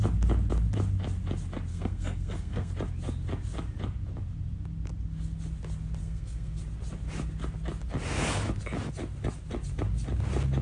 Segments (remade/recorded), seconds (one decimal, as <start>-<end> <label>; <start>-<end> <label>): 0.0-1.7 recorded; 1.7-2.7 remade; 2.7-6.0 recorded; 6.0-6.6 remade; 6.6-10.6 recorded